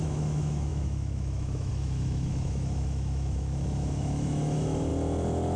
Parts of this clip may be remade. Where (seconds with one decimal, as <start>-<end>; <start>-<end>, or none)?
0.0-4.9